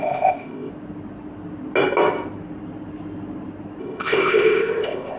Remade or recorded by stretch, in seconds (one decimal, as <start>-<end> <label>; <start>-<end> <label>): 0.0-0.7 remade; 0.7-3.8 recorded; 3.8-5.2 remade